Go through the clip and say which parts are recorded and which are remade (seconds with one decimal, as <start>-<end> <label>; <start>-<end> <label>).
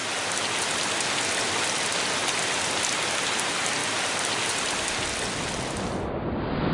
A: 0.0-3.8 recorded; 3.8-4.9 remade; 4.9-6.7 recorded